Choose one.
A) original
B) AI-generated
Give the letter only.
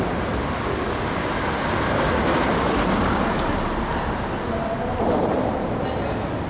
A